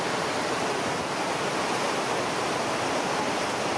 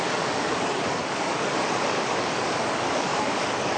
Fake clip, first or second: second